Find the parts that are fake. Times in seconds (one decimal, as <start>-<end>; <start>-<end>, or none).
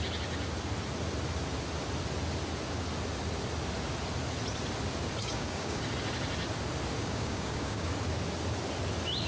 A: 5.2-5.8; 7.0-7.9